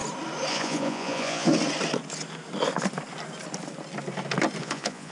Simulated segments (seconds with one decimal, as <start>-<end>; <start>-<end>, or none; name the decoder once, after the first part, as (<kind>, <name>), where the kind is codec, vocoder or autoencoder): 0.5-1.5 (vocoder, Vocos); 4.6-5.1